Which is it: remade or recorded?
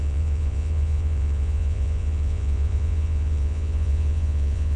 remade